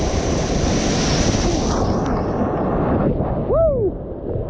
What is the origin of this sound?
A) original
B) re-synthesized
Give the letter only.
A